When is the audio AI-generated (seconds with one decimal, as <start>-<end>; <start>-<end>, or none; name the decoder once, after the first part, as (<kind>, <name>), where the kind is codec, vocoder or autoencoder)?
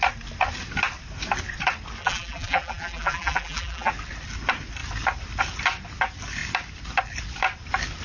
2.0-3.9 (vocoder, BigVGAN v2)